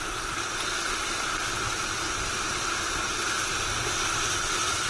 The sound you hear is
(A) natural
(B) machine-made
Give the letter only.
A